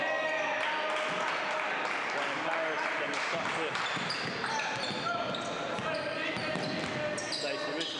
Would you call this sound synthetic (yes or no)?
no